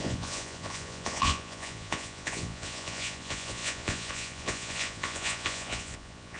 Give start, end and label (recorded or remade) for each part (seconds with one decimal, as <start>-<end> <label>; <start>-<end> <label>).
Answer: 0.0-6.4 remade